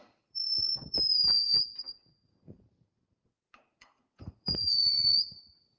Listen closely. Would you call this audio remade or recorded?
remade